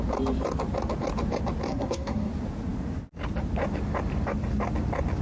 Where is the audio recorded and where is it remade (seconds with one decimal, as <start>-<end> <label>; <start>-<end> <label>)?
0.0-1.7 recorded; 1.7-2.3 remade; 2.3-5.2 recorded

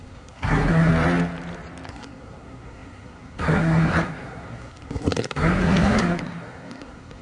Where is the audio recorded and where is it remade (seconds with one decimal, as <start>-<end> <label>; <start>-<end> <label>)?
0.0-0.9 remade; 0.9-1.9 recorded; 1.9-7.2 remade